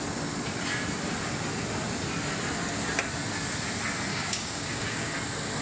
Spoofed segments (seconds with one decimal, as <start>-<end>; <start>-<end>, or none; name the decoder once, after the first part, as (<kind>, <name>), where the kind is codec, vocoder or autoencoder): 4.1-5.1 (codec, DAC)